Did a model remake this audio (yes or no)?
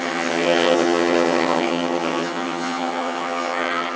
yes